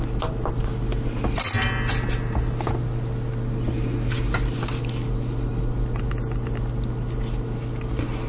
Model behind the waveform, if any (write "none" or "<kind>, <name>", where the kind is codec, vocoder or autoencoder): none